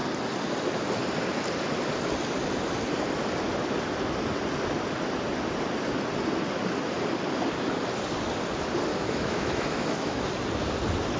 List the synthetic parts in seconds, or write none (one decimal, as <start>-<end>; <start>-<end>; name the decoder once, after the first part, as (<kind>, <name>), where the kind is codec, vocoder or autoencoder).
8.9-10.2 (autoencoder, DAC-VAE)